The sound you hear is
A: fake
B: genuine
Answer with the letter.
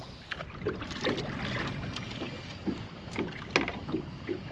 B